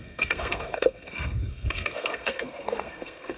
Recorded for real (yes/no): no